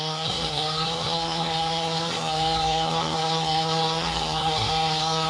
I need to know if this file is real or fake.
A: fake